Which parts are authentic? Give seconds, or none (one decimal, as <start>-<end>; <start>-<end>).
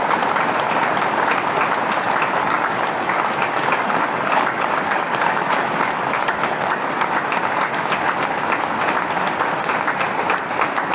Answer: 0.0-2.4; 6.7-10.9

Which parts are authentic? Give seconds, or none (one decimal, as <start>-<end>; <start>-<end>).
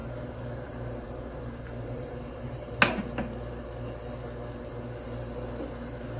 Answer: 2.8-6.2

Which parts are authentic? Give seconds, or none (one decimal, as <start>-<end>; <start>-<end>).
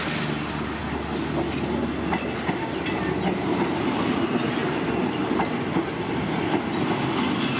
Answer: 0.0-7.6